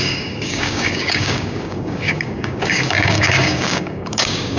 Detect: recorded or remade remade